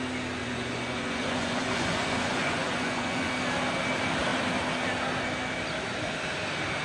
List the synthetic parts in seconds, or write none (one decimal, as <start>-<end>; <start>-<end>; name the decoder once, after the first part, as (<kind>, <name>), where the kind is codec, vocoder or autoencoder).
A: 0.4-3.3 (vocoder, Vocos)